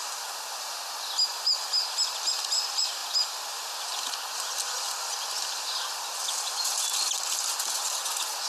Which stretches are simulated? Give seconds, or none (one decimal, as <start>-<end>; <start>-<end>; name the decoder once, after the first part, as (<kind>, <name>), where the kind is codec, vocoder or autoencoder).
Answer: none